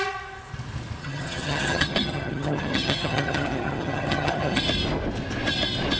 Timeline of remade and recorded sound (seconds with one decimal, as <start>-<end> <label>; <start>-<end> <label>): 0.0-1.0 recorded; 1.0-4.6 remade; 4.6-6.0 recorded